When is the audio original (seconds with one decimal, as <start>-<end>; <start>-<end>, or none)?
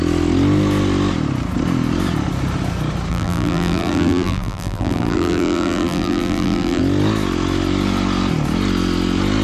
0.0-3.1; 6.8-9.4